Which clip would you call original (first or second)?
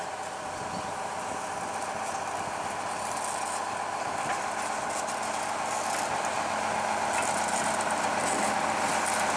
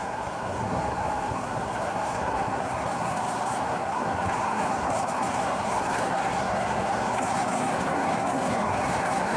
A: first